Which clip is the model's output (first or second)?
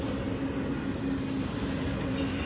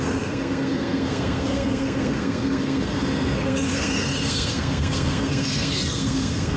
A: second